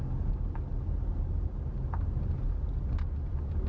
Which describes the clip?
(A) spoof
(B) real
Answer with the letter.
B